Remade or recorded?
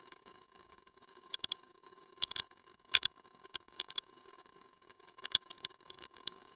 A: remade